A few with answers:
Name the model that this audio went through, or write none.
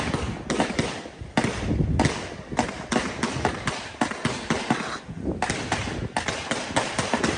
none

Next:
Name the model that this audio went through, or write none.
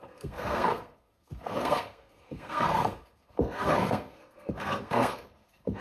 codec, SNAC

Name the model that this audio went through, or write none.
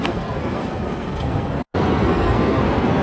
codec, SNAC